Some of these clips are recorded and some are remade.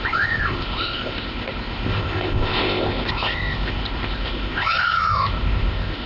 remade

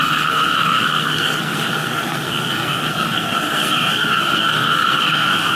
remade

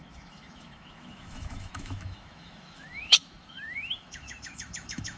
remade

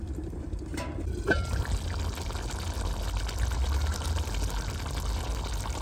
recorded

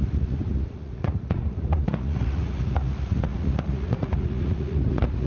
remade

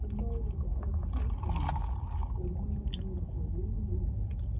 recorded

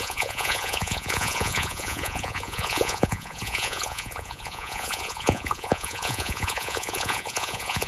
remade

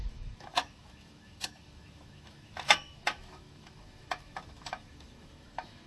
remade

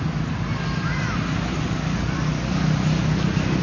recorded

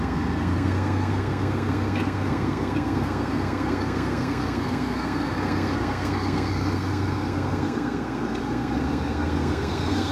remade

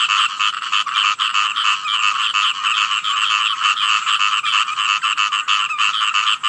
recorded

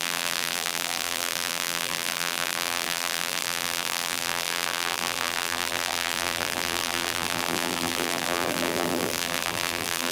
remade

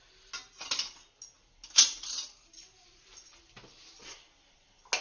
recorded